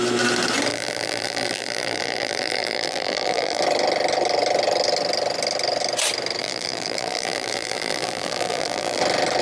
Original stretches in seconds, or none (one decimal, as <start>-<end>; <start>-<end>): 0.0-0.7; 3.6-6.4; 9.0-9.4